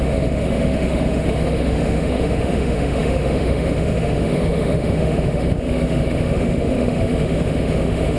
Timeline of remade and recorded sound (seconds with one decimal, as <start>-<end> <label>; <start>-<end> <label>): 0.0-8.2 remade